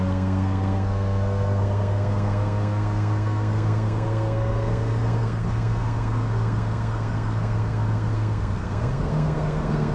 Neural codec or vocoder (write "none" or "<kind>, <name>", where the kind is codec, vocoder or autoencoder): codec, SNAC